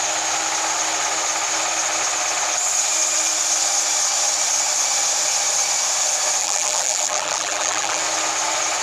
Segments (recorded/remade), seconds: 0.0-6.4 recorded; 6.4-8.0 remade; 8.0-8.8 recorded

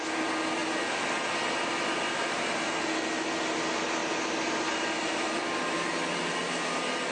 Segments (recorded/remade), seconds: 0.0-7.1 recorded

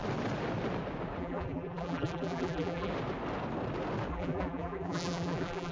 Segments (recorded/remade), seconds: 0.0-1.2 recorded; 1.2-2.9 remade; 2.9-4.1 recorded; 4.1-5.7 remade

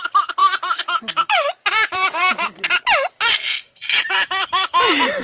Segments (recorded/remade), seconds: 0.0-5.2 remade

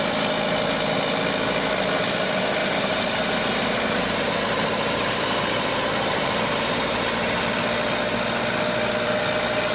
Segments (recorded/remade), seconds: 0.0-2.6 recorded; 2.6-7.4 remade; 7.4-9.7 recorded